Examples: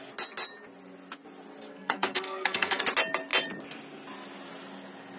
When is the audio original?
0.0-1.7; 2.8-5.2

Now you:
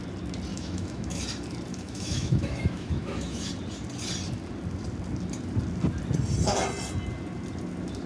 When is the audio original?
0.0-0.5; 1.2-1.7; 3.5-8.1

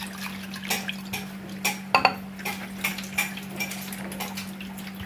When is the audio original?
0.0-5.1

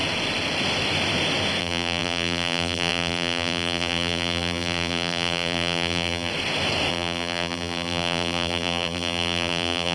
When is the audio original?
0.0-1.6; 6.3-6.9